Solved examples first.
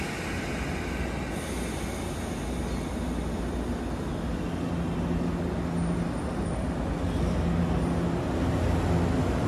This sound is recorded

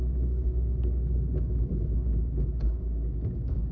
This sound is remade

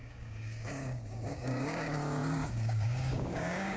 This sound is remade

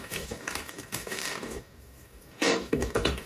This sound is remade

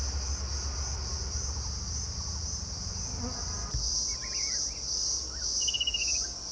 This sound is recorded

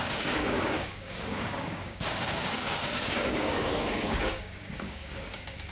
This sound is remade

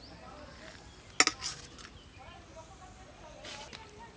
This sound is recorded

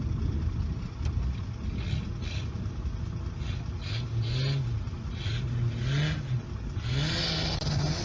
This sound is recorded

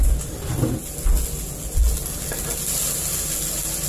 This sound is recorded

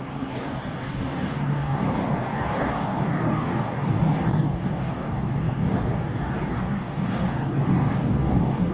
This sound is remade